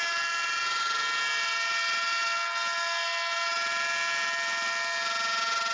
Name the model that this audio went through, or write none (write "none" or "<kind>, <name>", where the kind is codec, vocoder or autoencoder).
none